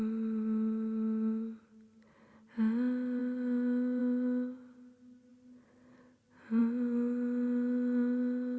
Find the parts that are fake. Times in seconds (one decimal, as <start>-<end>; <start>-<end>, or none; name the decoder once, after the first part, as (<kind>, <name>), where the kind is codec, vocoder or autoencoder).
none